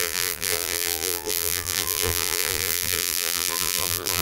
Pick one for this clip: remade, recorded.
remade